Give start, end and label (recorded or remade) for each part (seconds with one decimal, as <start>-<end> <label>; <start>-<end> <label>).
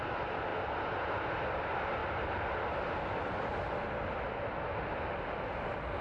0.0-6.0 recorded